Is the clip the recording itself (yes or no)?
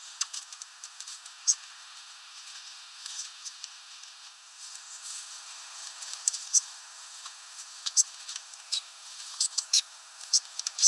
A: no